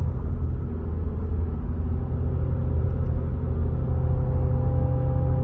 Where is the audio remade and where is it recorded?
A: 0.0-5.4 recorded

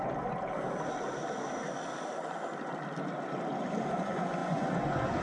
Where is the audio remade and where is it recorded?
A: 0.0-4.4 recorded; 4.4-5.2 remade

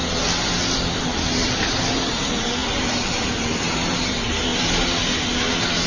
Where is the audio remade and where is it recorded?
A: 0.0-1.0 recorded; 1.0-4.5 remade; 4.5-5.9 recorded

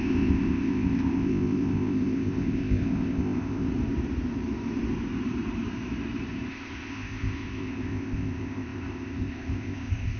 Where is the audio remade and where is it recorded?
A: 0.0-3.7 remade; 3.7-6.5 recorded; 6.5-10.2 remade

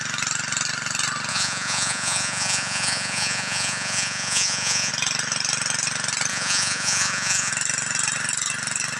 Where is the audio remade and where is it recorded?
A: 0.0-1.3 recorded; 1.3-4.9 remade; 4.9-6.3 recorded; 6.3-7.5 remade; 7.5-9.0 recorded

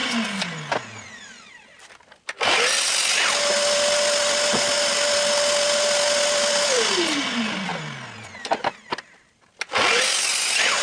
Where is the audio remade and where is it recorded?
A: 0.0-10.8 recorded

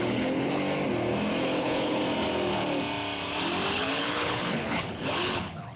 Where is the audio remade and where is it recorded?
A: 0.0-0.6 remade; 0.6-1.4 recorded; 1.4-2.0 remade; 2.0-3.7 recorded; 3.7-5.8 remade

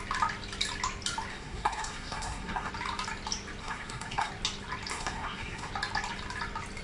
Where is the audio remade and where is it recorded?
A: 0.0-1.3 recorded; 1.3-2.7 remade; 2.7-3.6 recorded; 3.6-4.3 remade; 4.3-4.9 recorded; 4.9-5.7 remade; 5.7-6.8 recorded